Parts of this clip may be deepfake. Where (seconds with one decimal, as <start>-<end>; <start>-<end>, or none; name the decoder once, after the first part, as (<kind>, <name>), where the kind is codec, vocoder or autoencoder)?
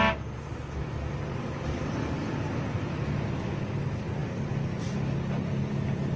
none